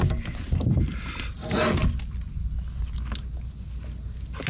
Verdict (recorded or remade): recorded